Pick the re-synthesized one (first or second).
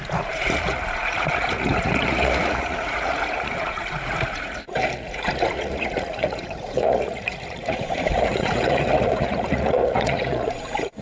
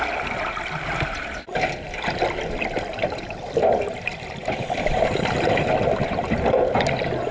first